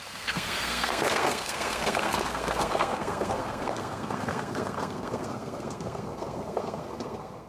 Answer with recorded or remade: remade